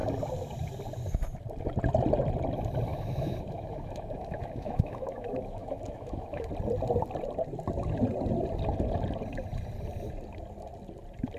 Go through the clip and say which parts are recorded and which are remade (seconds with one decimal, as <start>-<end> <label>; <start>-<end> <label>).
0.0-2.9 recorded; 2.9-6.5 remade; 6.5-11.4 recorded